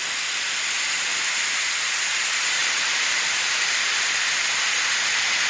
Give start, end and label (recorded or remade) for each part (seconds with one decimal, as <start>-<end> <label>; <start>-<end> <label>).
0.0-1.1 recorded; 1.1-1.7 remade; 1.7-2.6 recorded; 2.6-4.4 remade; 4.4-5.5 recorded

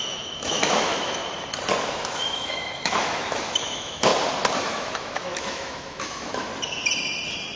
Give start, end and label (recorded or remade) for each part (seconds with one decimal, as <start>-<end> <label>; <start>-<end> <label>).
0.0-1.2 remade; 1.2-1.9 recorded; 1.9-4.1 remade; 4.1-4.6 recorded; 4.6-6.5 remade; 6.5-7.6 recorded

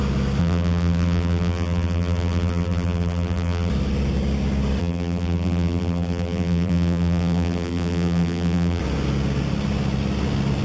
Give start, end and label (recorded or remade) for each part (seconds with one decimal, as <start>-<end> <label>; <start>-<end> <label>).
0.0-0.4 recorded; 0.4-3.7 remade; 3.7-4.8 recorded; 4.8-8.8 remade; 8.8-10.6 recorded

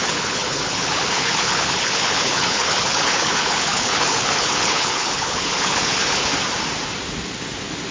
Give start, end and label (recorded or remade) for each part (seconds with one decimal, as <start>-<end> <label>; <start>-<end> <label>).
0.0-6.3 remade; 6.3-7.9 recorded